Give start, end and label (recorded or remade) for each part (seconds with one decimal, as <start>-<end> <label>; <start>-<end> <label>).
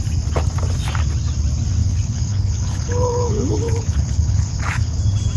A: 0.0-1.8 recorded; 1.8-5.0 remade; 5.0-5.4 recorded